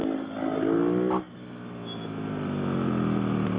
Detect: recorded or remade recorded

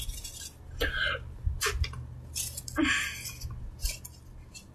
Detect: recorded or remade recorded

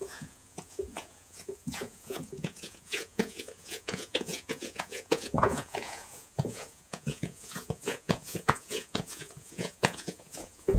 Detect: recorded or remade remade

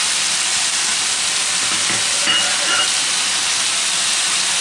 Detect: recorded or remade recorded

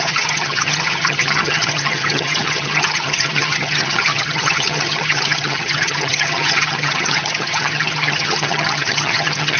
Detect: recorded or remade remade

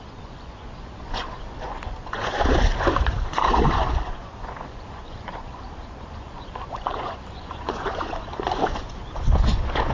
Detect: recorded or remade remade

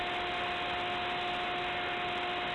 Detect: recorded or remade recorded